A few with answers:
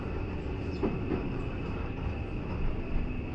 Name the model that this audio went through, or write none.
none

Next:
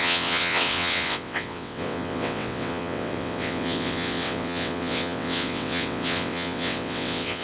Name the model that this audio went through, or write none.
vocoder, WaveNeXt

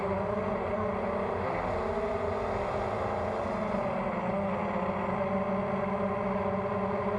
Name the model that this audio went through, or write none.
none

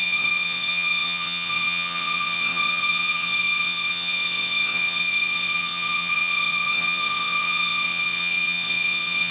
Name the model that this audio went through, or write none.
vocoder, WaveNeXt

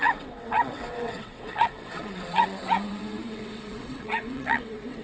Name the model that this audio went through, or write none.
vocoder, WaveNeXt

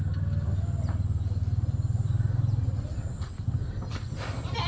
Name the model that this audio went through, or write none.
none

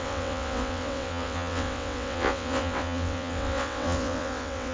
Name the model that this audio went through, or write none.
vocoder, WaveNeXt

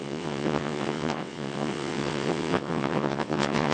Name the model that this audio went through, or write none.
vocoder, WaveNeXt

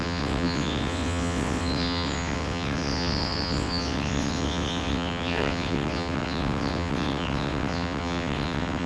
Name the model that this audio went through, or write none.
vocoder, WaveNeXt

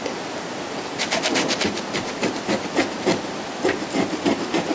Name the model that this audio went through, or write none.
none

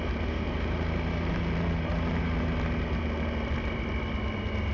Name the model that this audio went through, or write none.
none